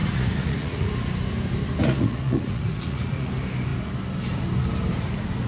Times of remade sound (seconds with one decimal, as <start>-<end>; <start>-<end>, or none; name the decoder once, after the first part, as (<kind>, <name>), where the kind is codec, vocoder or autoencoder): 0.0-0.9 (vocoder, Vocos); 1.8-3.3